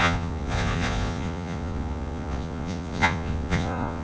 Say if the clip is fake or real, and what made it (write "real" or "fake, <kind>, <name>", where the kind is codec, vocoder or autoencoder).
fake, vocoder, Vocos